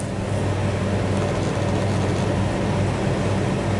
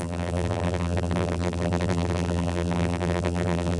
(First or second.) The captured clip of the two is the first